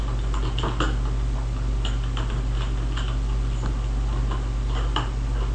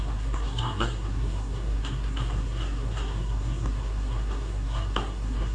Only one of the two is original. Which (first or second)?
first